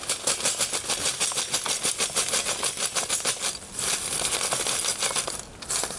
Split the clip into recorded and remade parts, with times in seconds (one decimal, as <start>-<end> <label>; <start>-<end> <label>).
0.0-6.0 recorded